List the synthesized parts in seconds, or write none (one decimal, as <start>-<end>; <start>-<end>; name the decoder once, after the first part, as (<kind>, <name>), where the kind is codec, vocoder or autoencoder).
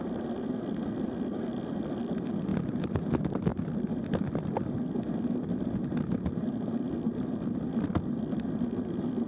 2.5-3.0 (vocoder, BigVGAN v2)